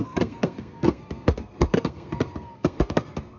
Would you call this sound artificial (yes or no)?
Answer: yes